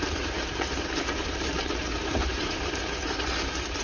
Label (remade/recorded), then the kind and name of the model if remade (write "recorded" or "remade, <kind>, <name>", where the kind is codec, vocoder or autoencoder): remade, vocoder, BigVGAN v2